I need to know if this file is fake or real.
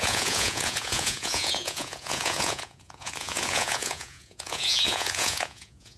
fake